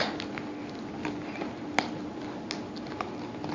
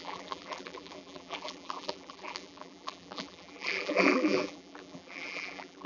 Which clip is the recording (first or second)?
first